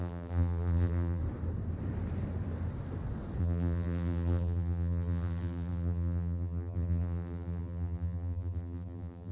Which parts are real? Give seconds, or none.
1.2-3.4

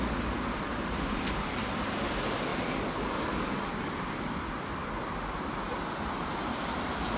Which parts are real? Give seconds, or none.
0.0-0.7; 1.3-7.2

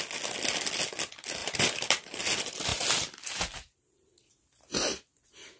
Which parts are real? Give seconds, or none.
0.0-1.4; 2.2-2.7; 4.3-5.6

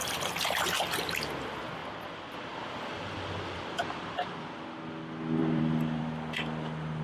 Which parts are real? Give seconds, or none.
0.0-1.8; 4.4-5.4; 6.0-7.0

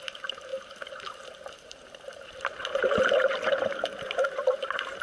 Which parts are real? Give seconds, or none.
none